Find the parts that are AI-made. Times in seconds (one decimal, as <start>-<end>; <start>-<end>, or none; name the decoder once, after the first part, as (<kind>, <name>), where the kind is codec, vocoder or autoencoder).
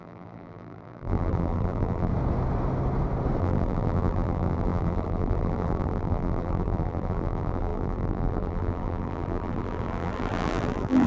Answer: 0.0-2.1 (vocoder, BigVGAN v2); 3.4-11.1